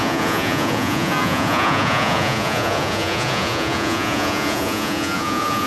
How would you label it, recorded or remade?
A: remade